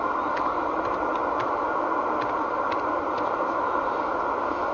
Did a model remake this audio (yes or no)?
no